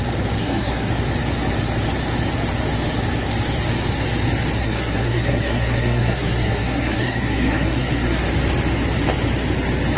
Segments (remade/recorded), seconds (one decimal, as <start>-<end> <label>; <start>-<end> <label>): 0.0-0.4 recorded; 0.4-0.9 remade; 0.9-4.6 recorded; 4.6-8.2 remade; 8.2-10.0 recorded